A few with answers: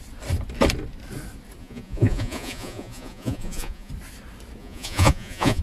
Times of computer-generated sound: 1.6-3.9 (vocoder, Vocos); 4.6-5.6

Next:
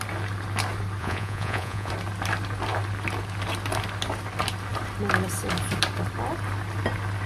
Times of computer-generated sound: 1.0-1.9 (vocoder, Vocos)

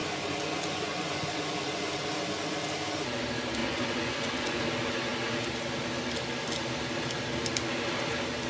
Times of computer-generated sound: 0.0-1.9 (vocoder, Vocos); 3.6-4.6

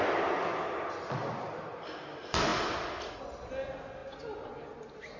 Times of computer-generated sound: none

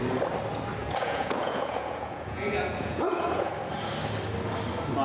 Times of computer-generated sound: 0.8-3.5 (vocoder, Vocos)

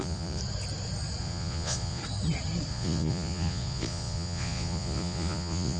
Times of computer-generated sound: 0.0-0.4 (vocoder, Vocos); 1.2-2.0; 2.7-5.8

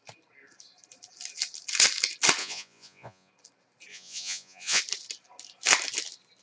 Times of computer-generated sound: 2.4-3.3 (vocoder, Vocos); 3.9-4.8

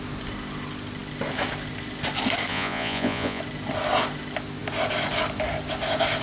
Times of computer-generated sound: 2.5-3.4 (vocoder, Vocos)